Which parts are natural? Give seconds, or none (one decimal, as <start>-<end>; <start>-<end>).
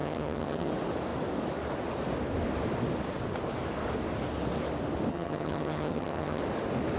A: 0.7-5.1; 6.4-7.0